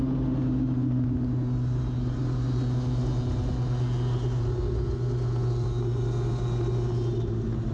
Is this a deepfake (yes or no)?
no